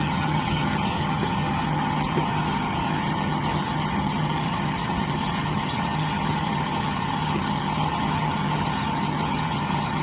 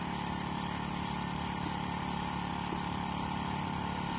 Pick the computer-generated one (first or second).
first